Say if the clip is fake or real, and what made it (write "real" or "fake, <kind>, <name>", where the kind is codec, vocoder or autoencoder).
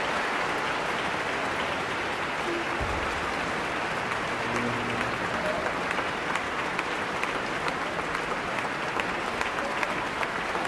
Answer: real